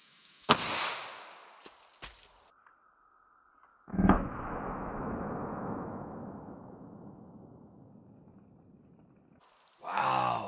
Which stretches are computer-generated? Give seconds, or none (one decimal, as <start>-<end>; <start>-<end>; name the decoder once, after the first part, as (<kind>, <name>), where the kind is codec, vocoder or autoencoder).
0.0-0.5 (autoencoder, DAC-VAE); 3.7-7.9